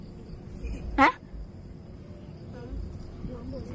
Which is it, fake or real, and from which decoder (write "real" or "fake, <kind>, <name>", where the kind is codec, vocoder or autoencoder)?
fake, vocoder, BigVGAN v2